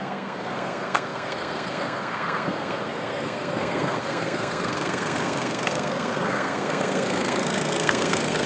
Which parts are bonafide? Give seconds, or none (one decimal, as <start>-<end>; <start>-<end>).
none